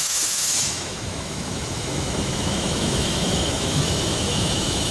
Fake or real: fake